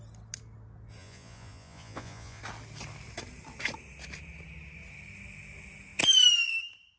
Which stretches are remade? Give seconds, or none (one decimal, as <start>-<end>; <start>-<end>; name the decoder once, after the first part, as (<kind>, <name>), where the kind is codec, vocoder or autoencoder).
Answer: 1.0-2.4 (vocoder, Vocos)